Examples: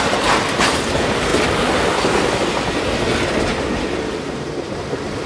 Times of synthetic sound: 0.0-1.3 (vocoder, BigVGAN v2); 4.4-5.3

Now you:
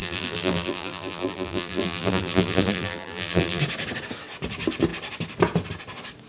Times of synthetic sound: 0.0-3.6 (vocoder, BigVGAN v2)

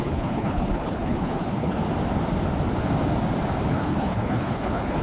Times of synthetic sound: 0.0-1.8 (codec, HILCodec); 3.7-5.0